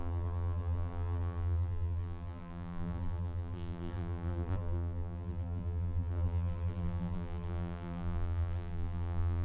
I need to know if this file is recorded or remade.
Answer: remade